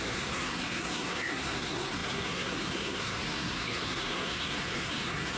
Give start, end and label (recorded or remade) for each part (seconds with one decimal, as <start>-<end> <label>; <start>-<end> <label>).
0.0-5.4 remade